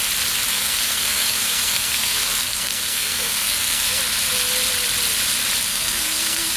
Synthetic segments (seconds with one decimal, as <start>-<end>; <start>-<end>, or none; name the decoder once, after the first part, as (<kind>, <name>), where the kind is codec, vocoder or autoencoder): 0.5-4.0 (codec, SNAC); 5.7-6.6